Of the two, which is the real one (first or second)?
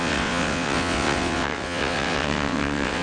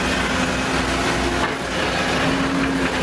second